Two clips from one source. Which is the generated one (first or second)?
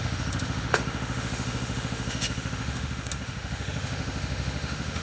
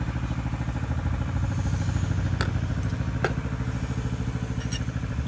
first